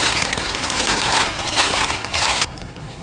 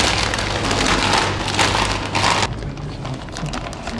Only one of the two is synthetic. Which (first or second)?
first